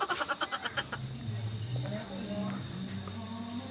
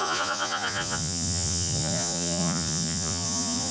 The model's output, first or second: second